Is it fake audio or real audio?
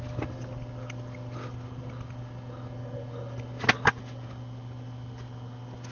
real